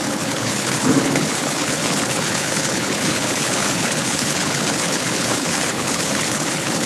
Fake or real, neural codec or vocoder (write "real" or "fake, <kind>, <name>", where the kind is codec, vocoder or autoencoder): fake, codec, HILCodec